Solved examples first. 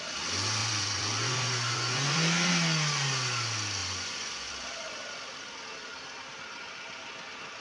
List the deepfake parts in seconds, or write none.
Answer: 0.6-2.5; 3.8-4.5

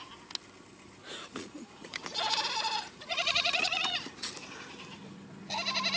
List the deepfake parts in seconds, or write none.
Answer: 1.1-4.3